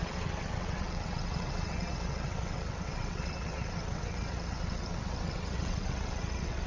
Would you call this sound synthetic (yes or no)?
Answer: yes